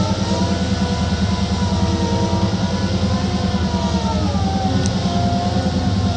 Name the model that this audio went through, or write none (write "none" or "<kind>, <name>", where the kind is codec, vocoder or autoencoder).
none